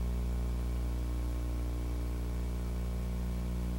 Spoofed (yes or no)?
no